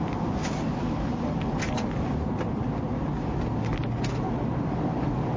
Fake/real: real